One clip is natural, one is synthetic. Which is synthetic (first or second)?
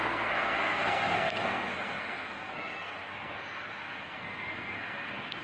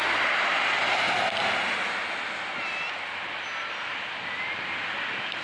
first